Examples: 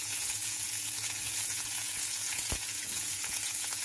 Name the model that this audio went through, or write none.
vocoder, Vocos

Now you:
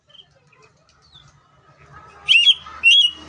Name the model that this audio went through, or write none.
none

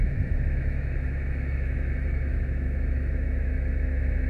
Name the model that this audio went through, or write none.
autoencoder, DAC-VAE